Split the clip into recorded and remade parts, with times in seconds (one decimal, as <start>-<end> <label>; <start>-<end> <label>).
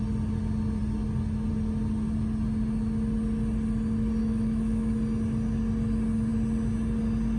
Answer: 0.0-4.2 recorded; 4.2-4.9 remade; 4.9-7.4 recorded